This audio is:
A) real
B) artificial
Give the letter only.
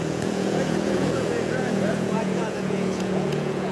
B